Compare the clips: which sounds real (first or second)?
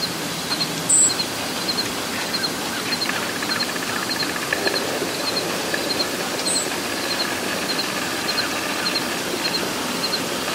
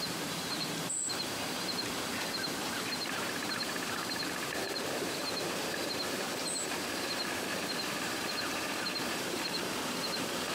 first